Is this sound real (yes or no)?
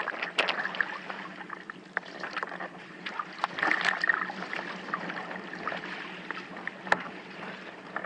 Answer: yes